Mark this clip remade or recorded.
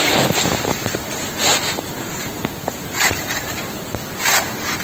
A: remade